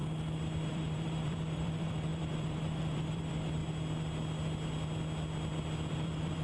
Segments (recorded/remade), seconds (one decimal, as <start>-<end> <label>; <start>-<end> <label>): 0.0-0.7 recorded; 0.7-3.6 remade; 3.6-5.9 recorded; 5.9-6.4 remade

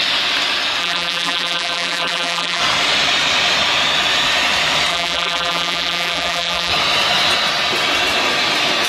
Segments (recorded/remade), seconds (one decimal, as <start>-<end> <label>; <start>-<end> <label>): 0.0-0.8 recorded; 0.8-2.6 remade; 2.6-4.9 recorded; 4.9-6.7 remade; 6.7-8.9 recorded

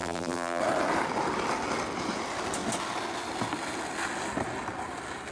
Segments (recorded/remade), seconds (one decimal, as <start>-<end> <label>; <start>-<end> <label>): 0.0-0.6 remade; 0.6-5.3 recorded

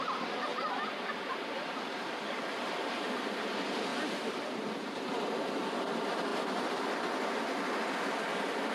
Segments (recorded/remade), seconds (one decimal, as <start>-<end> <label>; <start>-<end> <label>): 0.0-0.5 recorded; 0.5-1.1 remade; 1.1-3.9 recorded; 3.9-5.8 remade; 5.8-6.3 recorded; 6.3-6.9 remade; 6.9-8.7 recorded

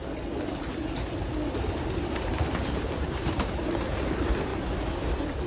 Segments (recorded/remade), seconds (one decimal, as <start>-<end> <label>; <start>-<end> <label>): 0.0-2.3 recorded; 2.3-4.5 remade; 4.5-5.1 recorded; 5.1-5.5 remade

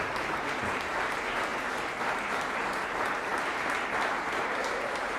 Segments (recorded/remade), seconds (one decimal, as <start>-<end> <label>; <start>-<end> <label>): 0.0-3.3 remade; 3.3-4.1 recorded; 4.1-5.2 remade

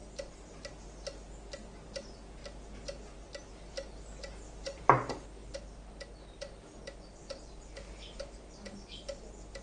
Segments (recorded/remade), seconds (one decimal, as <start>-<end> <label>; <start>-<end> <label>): 0.0-9.6 recorded